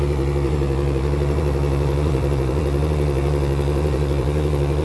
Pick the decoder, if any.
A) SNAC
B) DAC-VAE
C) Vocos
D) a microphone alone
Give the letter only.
C